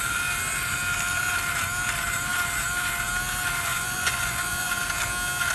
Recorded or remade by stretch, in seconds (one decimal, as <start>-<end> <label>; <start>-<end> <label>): 0.0-3.7 recorded; 3.7-4.7 remade; 4.7-5.5 recorded